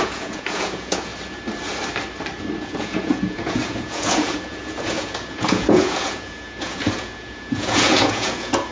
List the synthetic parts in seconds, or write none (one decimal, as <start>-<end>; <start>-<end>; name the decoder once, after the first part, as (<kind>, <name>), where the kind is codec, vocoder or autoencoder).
0.0-1.1 (vocoder, Vocos); 2.6-8.7